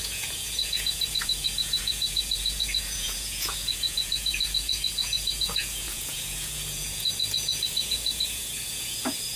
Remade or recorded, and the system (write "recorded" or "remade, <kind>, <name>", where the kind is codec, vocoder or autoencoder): remade, vocoder, Vocos